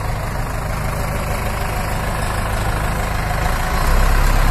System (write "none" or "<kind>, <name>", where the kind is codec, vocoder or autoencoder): none